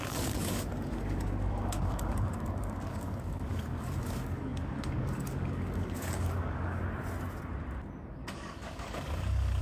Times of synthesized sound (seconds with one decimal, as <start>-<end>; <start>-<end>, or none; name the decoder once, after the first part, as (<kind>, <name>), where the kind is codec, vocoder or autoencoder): 0.0-6.8 (codec, DAC); 8.0-9.6